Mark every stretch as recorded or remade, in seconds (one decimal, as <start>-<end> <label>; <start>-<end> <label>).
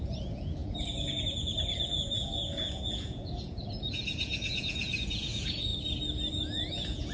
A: 0.0-5.7 remade; 5.7-6.3 recorded; 6.3-7.1 remade